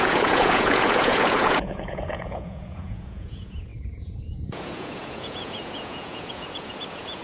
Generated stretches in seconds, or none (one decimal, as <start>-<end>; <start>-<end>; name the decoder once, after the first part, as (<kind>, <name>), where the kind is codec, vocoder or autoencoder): 0.0-7.2 (vocoder, Vocos)